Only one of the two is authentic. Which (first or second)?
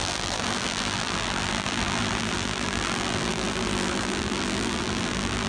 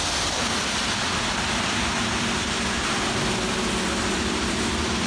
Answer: second